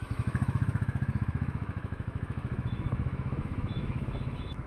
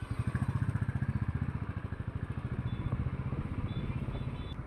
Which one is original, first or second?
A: second